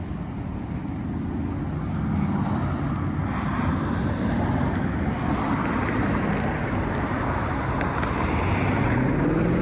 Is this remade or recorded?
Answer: recorded